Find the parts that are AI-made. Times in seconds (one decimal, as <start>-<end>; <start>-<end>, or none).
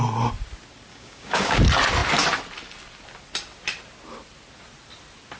0.9-1.6